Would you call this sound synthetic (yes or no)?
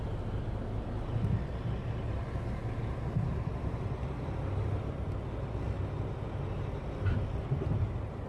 no